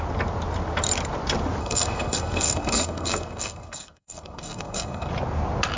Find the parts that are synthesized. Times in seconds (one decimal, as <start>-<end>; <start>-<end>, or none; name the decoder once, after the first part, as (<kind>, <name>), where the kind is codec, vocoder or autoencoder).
1.6-5.1 (codec, SNAC)